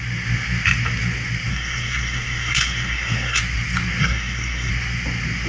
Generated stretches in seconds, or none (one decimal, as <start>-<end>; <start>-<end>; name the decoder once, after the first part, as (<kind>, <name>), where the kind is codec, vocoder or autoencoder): 1.5-3.4 (codec, SNAC); 4.0-4.7